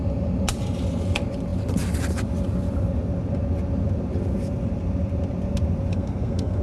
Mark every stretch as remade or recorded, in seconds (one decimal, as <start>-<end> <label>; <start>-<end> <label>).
0.0-5.9 recorded; 5.9-6.6 remade